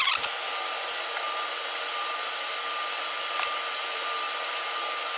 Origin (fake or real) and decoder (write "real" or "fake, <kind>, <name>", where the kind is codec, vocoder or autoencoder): real